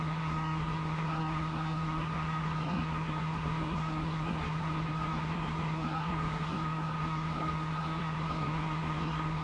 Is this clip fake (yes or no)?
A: yes